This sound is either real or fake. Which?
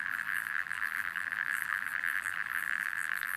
fake